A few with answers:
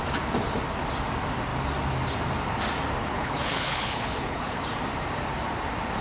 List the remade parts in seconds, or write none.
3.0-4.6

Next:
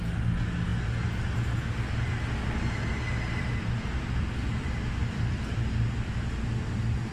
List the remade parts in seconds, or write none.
5.0-6.1

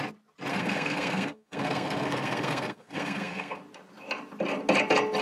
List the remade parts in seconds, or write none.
0.5-3.6

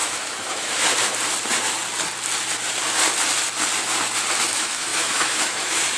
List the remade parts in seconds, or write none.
0.0-0.9; 4.5-6.0

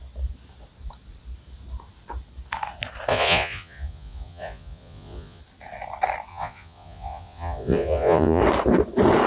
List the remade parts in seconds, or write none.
3.1-5.4; 6.3-8.4